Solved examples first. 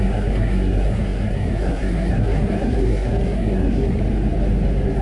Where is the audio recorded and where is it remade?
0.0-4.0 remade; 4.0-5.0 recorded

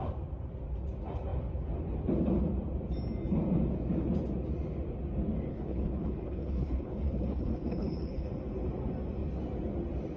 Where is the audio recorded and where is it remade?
0.0-5.5 recorded; 5.5-8.3 remade; 8.3-10.2 recorded

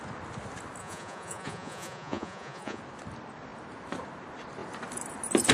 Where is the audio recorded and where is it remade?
0.0-0.8 recorded; 0.8-2.8 remade; 2.8-5.5 recorded

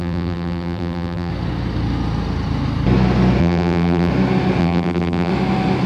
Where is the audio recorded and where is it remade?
0.0-1.3 remade; 1.3-3.4 recorded; 3.4-4.1 remade; 4.1-4.6 recorded; 4.6-5.3 remade; 5.3-5.9 recorded